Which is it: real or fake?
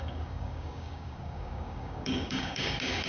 fake